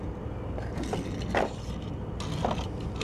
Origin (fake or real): real